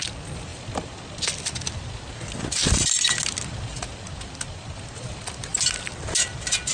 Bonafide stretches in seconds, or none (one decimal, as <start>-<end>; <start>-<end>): 0.0-6.7